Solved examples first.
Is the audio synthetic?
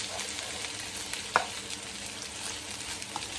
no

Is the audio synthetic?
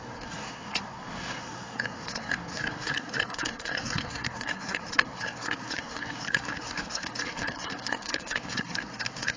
yes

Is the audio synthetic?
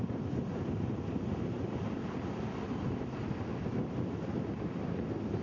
no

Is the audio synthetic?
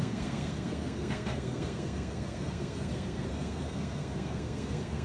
yes